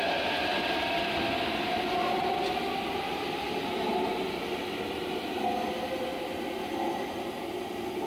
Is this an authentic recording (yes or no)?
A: yes